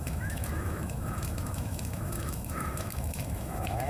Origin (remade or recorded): remade